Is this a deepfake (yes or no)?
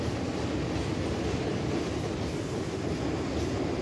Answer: no